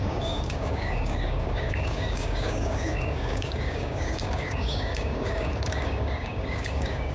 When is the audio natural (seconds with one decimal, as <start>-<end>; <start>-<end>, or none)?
none